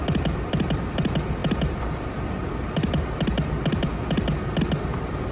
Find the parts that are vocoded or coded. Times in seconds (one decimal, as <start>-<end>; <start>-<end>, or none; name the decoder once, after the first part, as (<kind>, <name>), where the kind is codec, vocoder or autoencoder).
none